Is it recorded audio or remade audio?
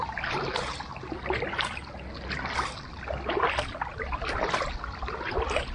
recorded